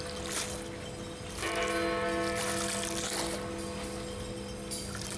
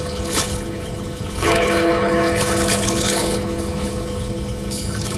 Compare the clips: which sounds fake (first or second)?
second